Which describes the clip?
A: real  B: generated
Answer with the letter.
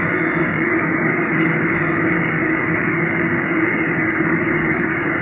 B